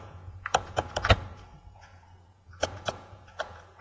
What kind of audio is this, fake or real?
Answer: fake